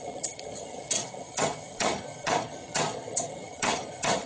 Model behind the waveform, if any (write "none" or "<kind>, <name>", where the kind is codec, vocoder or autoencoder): vocoder, HiFi-GAN